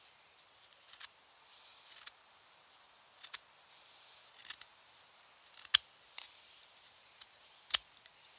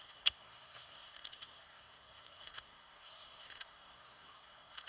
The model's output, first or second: second